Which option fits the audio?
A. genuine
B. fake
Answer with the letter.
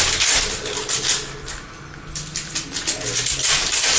A